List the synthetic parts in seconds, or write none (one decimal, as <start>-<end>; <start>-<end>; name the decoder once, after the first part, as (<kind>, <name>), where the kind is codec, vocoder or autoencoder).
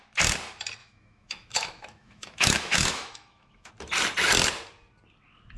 0.8-3.7 (autoencoder, DAC-VAE)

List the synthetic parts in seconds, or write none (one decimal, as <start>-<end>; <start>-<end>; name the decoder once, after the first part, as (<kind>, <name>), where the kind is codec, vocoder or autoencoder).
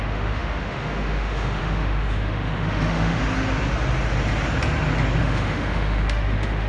0.0-3.2 (autoencoder, DAC-VAE); 5.2-6.7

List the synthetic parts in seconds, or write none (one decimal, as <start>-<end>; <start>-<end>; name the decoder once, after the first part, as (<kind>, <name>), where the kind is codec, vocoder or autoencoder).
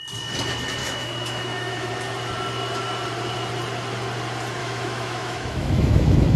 0.8-1.9 (autoencoder, DAC-VAE); 4.6-6.4